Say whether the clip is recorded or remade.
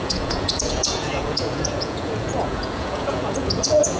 remade